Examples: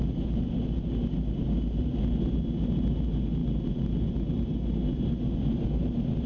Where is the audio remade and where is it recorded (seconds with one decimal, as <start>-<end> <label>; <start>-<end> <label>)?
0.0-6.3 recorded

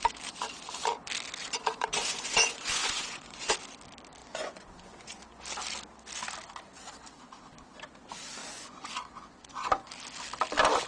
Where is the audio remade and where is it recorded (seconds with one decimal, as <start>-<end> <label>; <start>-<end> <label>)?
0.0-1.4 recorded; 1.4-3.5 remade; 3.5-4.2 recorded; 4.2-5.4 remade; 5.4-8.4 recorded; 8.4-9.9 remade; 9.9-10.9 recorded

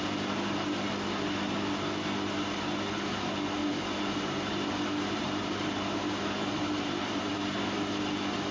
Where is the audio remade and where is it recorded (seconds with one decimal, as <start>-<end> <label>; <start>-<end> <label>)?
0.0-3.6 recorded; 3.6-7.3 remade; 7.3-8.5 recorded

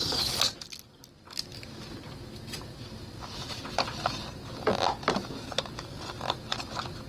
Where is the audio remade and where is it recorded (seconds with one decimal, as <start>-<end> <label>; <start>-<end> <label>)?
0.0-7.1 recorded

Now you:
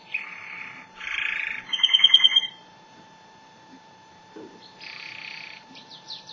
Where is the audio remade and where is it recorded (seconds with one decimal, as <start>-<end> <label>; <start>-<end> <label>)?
0.0-1.7 remade; 1.7-2.3 recorded; 2.3-6.3 remade

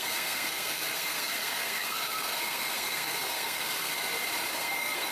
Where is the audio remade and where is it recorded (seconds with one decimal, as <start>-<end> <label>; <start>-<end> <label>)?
0.0-3.9 remade; 3.9-4.5 recorded; 4.5-5.1 remade

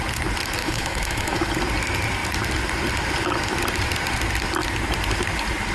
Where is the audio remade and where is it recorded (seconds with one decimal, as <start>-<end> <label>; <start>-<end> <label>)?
0.0-0.6 recorded; 0.6-1.4 remade; 1.4-5.7 recorded

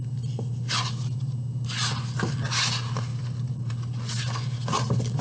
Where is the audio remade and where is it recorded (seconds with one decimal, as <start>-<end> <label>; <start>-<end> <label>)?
0.0-3.1 recorded; 3.1-3.7 remade; 3.7-5.2 recorded